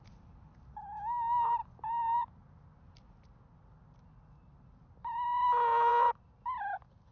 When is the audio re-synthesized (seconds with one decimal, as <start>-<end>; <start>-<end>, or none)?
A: none